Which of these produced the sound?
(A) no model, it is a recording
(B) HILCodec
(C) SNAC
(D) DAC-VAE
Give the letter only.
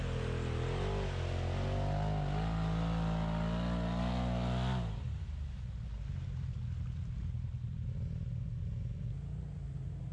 A